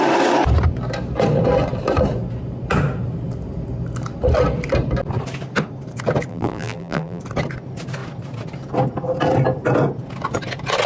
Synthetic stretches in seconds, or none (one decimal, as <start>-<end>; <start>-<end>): 6.3-7.2